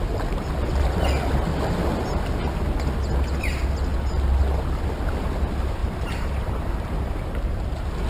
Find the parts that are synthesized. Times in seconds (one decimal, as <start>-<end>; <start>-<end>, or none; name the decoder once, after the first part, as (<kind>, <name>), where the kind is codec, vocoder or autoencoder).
5.8-7.3 (vocoder, BigVGAN v2)